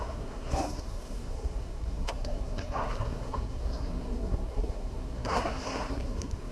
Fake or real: fake